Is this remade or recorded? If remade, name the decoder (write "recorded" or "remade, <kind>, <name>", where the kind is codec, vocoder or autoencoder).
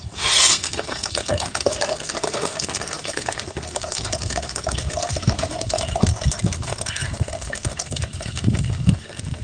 remade, codec, SNAC